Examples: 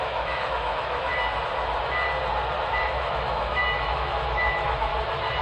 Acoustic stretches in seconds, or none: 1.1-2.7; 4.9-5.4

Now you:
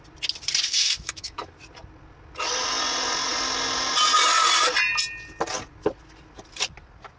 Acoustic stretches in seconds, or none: 0.0-0.7; 1.5-7.2

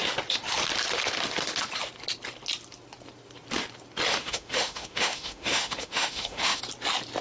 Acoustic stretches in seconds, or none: 0.0-4.1; 6.6-7.2

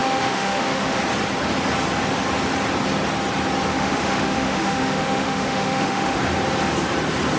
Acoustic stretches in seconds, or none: 1.0-3.7; 6.2-7.4

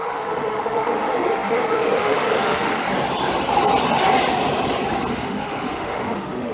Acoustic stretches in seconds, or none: 2.8-5.1